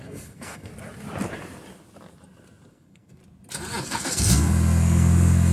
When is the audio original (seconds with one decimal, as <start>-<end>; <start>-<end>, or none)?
0.7-2.7; 3.2-3.8